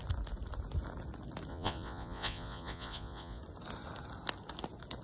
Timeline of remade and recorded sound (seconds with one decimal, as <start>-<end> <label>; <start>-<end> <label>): 0.0-1.5 recorded; 1.5-3.4 remade; 3.4-5.0 recorded